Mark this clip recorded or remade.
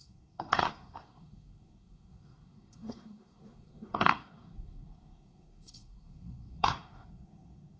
remade